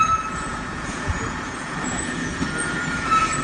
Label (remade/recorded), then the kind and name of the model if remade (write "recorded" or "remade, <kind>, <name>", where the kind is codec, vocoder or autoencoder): remade, vocoder, Vocos